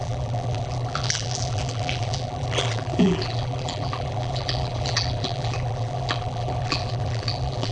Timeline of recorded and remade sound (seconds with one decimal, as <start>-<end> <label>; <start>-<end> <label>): 0.0-7.7 remade